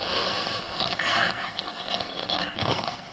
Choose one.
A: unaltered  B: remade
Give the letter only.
B